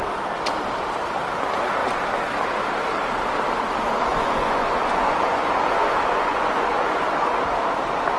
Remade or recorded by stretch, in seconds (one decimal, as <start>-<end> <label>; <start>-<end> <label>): 0.0-4.1 recorded; 4.1-7.0 remade; 7.0-8.2 recorded